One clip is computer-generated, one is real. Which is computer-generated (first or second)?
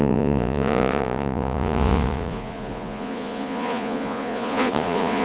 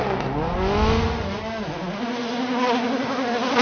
first